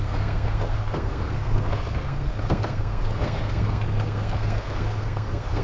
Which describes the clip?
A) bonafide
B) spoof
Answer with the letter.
B